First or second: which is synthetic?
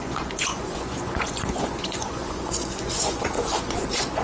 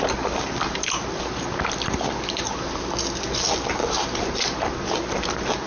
first